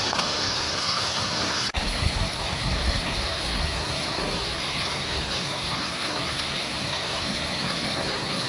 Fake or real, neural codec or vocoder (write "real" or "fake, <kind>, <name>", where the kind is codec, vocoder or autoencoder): fake, codec, SNAC